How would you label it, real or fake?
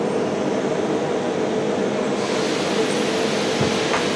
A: real